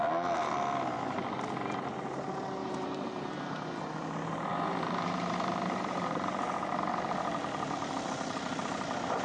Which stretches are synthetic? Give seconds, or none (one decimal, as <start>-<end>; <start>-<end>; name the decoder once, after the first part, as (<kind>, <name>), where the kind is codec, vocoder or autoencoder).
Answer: 2.6-3.7 (vocoder, BigVGAN v2); 4.5-6.7